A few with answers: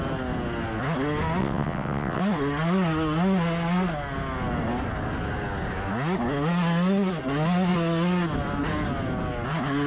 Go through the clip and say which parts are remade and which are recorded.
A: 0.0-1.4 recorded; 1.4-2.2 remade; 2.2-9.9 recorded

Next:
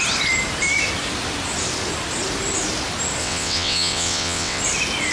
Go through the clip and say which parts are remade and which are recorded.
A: 0.0-3.2 recorded; 3.2-4.6 remade; 4.6-5.1 recorded

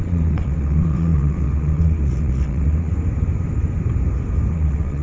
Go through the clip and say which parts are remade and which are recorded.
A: 0.0-2.9 remade; 2.9-4.5 recorded; 4.5-5.0 remade